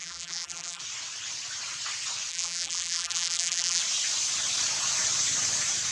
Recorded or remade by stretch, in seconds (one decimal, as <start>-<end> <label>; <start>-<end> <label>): 0.0-0.8 remade; 0.8-2.3 recorded; 2.3-3.8 remade; 3.8-5.9 recorded